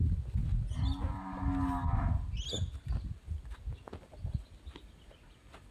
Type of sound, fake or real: real